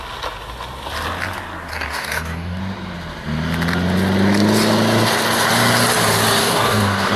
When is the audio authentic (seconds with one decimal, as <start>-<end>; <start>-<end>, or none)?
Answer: 0.0-1.7; 2.6-6.4